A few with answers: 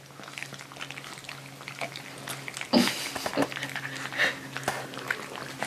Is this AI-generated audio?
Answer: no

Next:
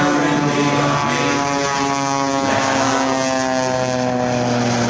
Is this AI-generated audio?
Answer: no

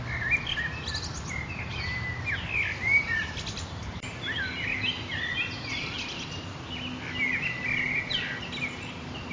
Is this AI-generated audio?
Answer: no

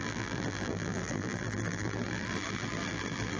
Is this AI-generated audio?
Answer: yes